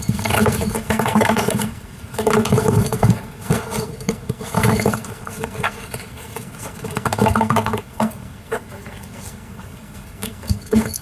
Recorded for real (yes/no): no